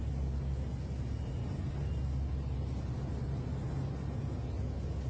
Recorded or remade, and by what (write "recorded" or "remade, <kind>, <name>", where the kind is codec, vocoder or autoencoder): recorded